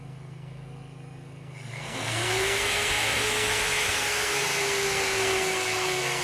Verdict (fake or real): fake